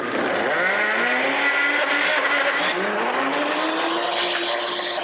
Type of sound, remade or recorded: recorded